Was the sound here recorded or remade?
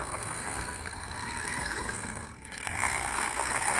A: remade